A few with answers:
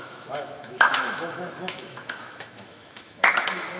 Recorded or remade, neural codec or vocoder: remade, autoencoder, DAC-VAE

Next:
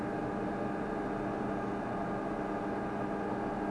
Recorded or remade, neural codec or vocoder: recorded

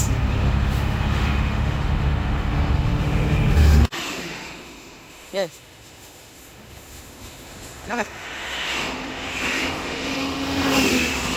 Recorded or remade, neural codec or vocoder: remade, autoencoder, DAC-VAE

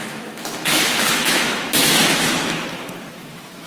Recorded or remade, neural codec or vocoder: remade, autoencoder, DAC-VAE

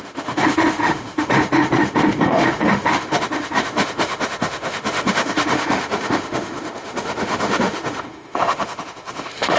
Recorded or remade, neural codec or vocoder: remade, autoencoder, DAC-VAE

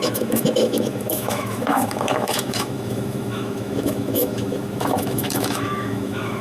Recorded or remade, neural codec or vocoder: remade, autoencoder, DAC-VAE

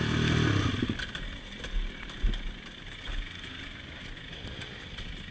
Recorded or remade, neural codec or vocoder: recorded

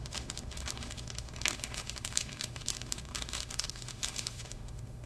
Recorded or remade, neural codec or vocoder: remade, autoencoder, DAC-VAE